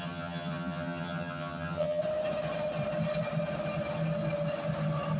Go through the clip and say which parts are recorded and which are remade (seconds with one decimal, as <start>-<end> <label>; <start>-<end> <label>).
0.0-2.0 remade; 2.0-5.2 recorded